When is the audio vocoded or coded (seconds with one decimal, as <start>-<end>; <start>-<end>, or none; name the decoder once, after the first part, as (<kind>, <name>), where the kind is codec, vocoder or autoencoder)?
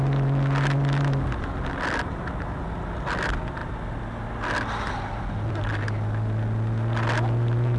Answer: none